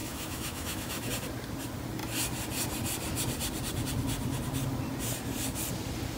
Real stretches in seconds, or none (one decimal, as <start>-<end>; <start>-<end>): 1.1-6.2